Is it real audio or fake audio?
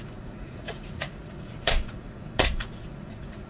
fake